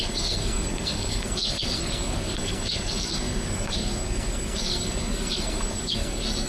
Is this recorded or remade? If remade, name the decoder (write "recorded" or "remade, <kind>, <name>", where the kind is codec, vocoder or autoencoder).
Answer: remade, codec, SNAC